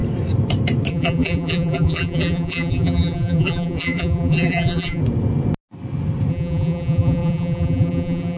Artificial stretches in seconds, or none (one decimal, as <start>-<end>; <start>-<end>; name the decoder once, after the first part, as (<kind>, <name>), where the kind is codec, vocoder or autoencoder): 0.9-5.0 (vocoder, BigVGAN v2); 6.3-8.4